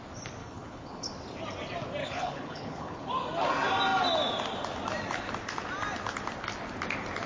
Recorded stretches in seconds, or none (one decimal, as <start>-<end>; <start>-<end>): 0.0-0.4; 1.1-2.0; 3.1-7.3